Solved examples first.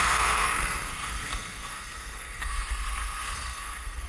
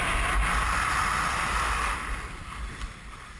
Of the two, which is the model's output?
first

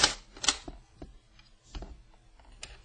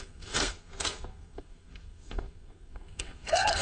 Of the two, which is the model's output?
second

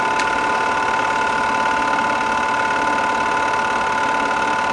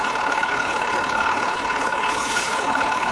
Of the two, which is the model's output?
second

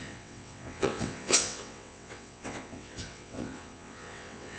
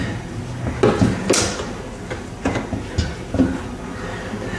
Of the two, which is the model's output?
first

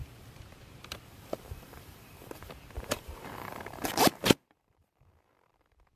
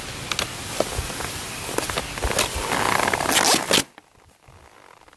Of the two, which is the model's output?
first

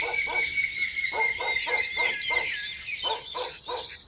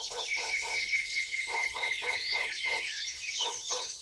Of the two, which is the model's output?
second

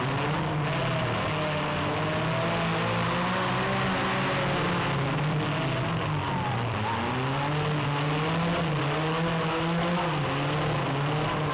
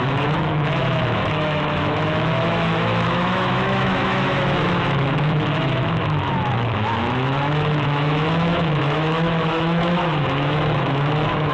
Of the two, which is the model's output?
second